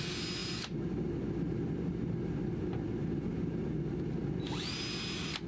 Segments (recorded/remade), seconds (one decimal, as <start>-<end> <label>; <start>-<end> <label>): 0.0-5.5 recorded